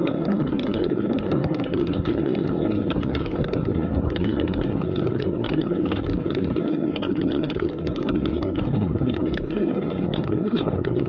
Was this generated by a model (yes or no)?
yes